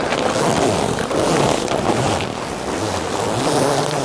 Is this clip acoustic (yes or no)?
yes